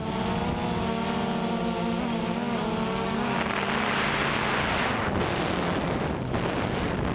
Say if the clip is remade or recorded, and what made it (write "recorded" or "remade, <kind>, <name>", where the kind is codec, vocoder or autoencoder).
recorded